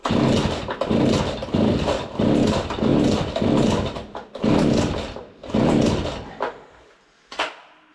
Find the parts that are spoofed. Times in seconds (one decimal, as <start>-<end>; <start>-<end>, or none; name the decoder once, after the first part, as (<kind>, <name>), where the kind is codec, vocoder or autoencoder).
0.0-1.2 (vocoder, BigVGAN v2)

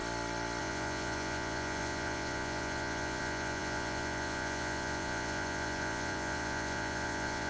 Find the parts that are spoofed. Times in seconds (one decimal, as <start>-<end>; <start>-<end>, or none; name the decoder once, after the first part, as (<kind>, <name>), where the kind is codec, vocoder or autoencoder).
0.6-7.5 (vocoder, Vocos)

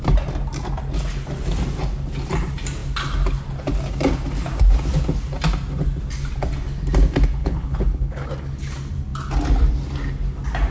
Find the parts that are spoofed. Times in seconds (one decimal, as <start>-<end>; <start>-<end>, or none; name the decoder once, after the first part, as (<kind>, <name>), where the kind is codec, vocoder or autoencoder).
7.4-8.3 (codec, HILCodec)

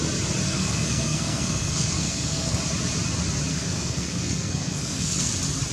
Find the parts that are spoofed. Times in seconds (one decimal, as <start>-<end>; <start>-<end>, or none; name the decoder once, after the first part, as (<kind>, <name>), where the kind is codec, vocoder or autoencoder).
0.5-2.6 (codec, SNAC); 3.5-5.3

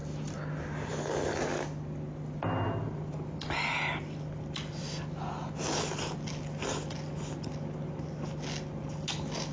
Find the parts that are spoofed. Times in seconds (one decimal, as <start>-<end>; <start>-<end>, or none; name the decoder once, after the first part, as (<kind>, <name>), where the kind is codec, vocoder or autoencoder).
none

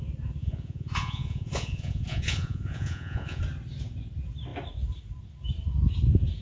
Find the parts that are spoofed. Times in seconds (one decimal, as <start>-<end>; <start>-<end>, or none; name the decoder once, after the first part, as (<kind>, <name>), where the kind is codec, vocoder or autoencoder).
0.4-3.4 (vocoder, Vocos)

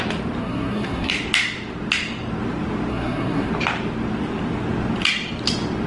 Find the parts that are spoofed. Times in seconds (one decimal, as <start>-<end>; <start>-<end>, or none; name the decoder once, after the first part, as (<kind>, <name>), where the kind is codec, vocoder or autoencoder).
0.4-1.1 (codec, SNAC); 2.9-3.5